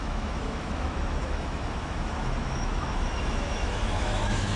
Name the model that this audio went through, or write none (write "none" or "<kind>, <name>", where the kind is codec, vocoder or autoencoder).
autoencoder, DAC-VAE